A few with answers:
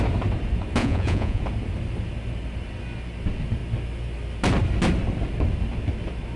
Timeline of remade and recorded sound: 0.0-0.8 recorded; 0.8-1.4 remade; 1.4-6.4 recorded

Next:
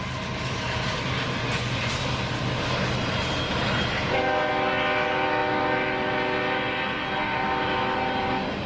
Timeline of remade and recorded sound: 0.0-1.4 recorded; 1.4-1.9 remade; 1.9-8.7 recorded

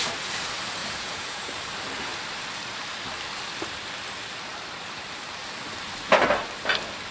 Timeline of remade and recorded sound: 0.0-0.8 recorded; 0.8-1.5 remade; 1.5-7.1 recorded

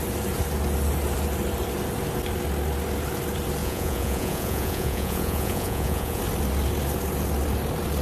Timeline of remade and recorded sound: 0.0-3.6 recorded; 3.6-6.2 remade; 6.2-8.0 recorded

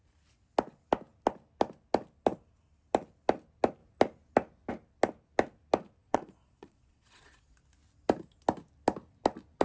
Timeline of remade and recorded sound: 0.0-6.0 recorded; 6.0-7.6 remade; 7.6-9.6 recorded